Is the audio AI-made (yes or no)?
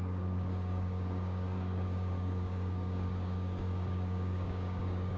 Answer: yes